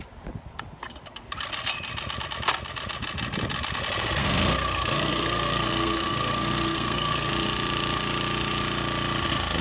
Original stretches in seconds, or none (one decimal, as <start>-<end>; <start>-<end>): 0.0-4.2; 7.3-9.6